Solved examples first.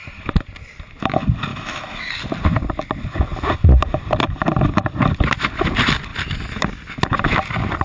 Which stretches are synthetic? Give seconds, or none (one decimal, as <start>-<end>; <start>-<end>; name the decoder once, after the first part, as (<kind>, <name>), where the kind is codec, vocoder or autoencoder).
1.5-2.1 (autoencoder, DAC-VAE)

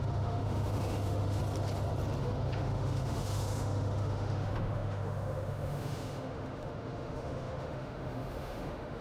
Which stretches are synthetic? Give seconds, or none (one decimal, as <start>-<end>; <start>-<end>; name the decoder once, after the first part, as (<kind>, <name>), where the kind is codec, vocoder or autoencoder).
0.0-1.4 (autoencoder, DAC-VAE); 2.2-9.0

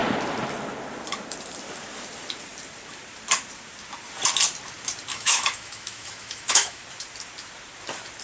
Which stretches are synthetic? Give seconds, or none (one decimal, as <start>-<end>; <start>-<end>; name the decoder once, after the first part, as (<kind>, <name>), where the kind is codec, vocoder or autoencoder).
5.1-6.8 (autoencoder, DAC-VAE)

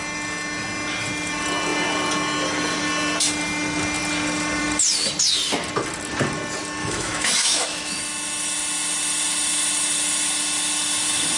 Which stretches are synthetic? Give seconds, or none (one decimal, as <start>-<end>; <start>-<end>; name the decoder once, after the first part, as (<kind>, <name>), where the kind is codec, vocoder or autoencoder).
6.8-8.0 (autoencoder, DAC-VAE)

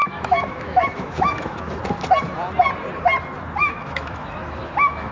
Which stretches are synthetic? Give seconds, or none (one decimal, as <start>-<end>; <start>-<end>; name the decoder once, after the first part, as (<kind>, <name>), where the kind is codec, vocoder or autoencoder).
0.0-1.8 (autoencoder, DAC-VAE); 3.6-5.1

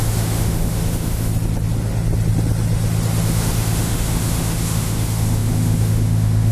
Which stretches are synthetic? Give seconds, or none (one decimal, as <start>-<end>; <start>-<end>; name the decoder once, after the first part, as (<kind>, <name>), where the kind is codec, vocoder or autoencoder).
0.0-1.3 (autoencoder, DAC-VAE); 3.2-6.5

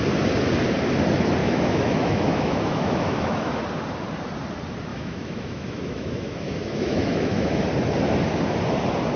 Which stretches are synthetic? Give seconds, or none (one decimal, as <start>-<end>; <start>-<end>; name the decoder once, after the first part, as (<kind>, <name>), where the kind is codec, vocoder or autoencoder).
1.4-3.6 (autoencoder, DAC-VAE); 4.9-7.6